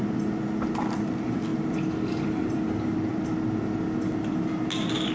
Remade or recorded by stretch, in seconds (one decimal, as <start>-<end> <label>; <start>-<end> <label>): 0.0-5.1 recorded